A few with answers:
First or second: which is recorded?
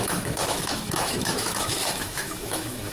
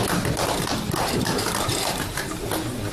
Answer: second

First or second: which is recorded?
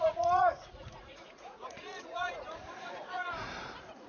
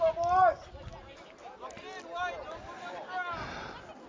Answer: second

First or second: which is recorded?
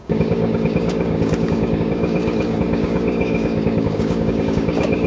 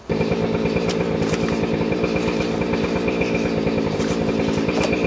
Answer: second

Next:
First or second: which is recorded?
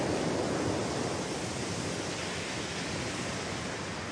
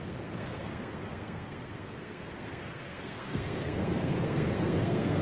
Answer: first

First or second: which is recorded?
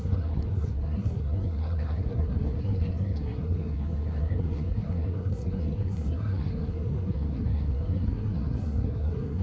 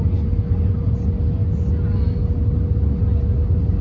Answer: second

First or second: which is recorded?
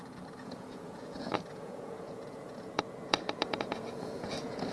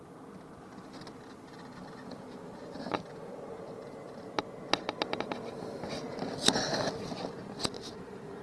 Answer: second